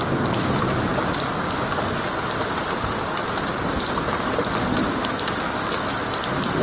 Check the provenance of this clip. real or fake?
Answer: real